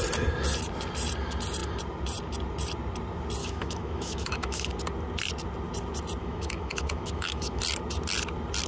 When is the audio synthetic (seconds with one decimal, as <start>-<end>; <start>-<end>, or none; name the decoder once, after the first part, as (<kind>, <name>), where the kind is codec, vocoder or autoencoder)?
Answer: 3.4-4.7 (autoencoder, DAC-VAE); 6.2-7.6